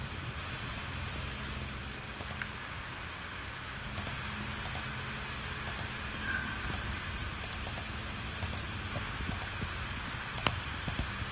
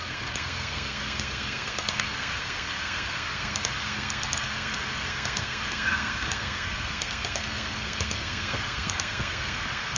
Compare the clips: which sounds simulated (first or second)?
second